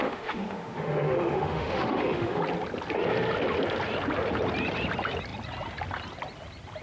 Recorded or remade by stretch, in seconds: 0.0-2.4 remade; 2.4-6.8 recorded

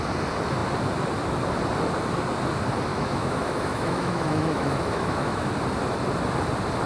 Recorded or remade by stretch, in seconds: 0.0-2.9 recorded; 2.9-5.5 remade; 5.5-6.9 recorded

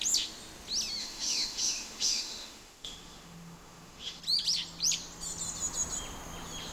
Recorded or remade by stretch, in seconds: 0.0-1.0 recorded; 1.0-4.2 remade; 4.2-6.7 recorded